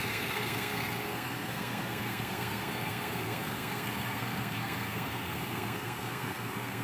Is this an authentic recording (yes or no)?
no